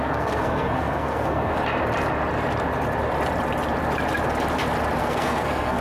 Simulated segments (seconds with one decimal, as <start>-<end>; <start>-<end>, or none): 0.0-1.5; 5.0-5.8